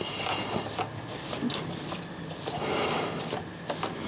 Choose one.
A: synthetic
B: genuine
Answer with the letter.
B